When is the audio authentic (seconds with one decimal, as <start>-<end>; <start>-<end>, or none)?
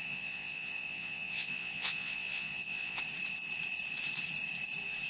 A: 3.0-5.1